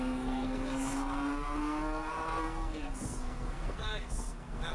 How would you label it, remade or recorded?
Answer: remade